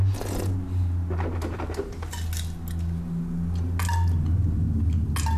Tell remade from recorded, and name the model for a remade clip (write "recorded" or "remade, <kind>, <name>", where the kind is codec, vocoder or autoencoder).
recorded